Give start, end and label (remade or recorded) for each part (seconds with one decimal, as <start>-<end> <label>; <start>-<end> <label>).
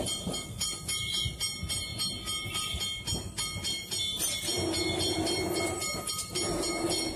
0.0-7.2 recorded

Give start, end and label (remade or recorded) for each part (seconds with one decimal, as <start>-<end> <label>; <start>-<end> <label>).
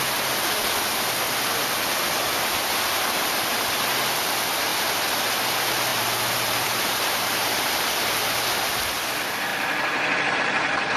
0.0-5.9 recorded; 5.9-7.7 remade; 7.7-11.0 recorded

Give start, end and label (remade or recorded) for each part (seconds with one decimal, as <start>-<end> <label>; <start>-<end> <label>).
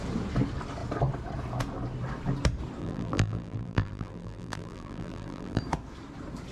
0.0-2.8 recorded; 2.8-5.6 remade; 5.6-6.5 recorded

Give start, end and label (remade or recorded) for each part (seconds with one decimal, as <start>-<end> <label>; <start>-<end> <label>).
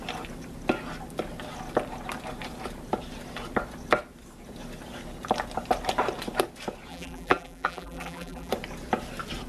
0.0-6.9 recorded; 6.9-8.5 remade; 8.5-9.5 recorded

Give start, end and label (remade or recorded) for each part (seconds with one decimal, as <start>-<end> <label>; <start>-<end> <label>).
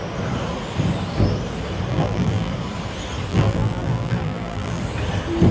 0.0-1.9 recorded; 1.9-2.5 remade; 2.5-3.3 recorded; 3.3-4.8 remade; 4.8-5.5 recorded